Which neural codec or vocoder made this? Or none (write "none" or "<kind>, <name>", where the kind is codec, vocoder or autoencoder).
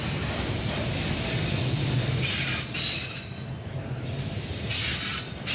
none